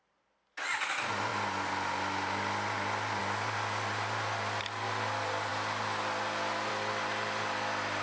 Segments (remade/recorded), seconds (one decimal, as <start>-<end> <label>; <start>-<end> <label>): 0.0-8.0 recorded